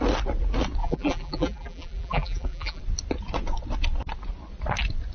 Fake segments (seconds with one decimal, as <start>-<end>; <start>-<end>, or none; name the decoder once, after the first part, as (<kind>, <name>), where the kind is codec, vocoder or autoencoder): 0.8-2.8 (vocoder, BigVGAN v2)